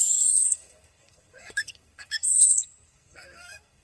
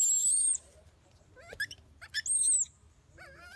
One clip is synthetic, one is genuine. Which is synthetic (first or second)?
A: first